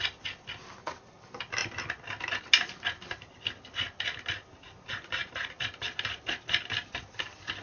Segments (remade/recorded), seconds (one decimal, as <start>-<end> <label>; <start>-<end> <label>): 0.0-7.6 recorded